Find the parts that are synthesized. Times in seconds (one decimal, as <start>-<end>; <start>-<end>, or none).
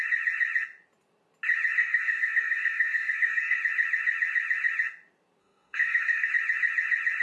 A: 1.8-3.6; 5.4-6.3